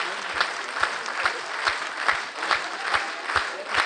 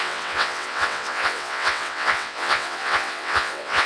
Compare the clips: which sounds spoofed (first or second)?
second